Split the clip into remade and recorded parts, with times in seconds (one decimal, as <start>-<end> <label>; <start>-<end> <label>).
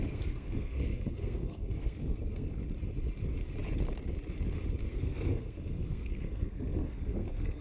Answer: 0.0-2.5 remade; 2.5-4.8 recorded; 4.8-7.6 remade